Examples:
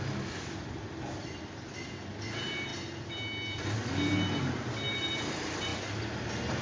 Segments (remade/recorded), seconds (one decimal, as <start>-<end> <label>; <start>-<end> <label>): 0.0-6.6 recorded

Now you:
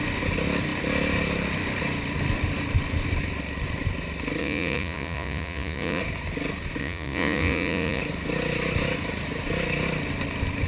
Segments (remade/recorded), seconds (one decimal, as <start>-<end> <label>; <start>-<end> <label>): 0.0-4.4 recorded; 4.4-6.0 remade; 6.0-6.8 recorded; 6.8-8.0 remade; 8.0-10.7 recorded

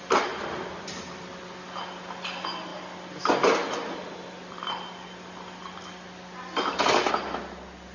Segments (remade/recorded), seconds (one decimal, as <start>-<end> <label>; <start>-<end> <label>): 0.0-7.9 recorded

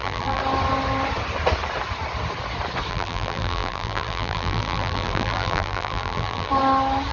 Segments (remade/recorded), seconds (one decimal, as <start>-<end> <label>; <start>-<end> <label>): 0.0-0.4 remade; 0.4-2.9 recorded; 2.9-6.5 remade; 6.5-7.1 recorded

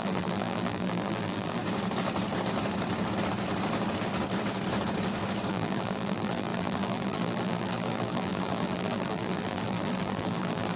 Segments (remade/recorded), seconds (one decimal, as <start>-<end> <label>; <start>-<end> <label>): 0.0-1.6 remade; 1.6-5.5 recorded; 5.5-10.8 remade